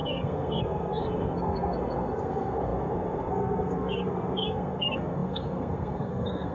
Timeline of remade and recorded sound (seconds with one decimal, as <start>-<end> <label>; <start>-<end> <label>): 0.0-6.5 remade